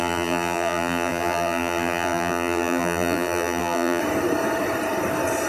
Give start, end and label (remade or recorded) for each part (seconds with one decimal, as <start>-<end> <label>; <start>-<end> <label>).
0.0-4.0 remade; 4.0-5.5 recorded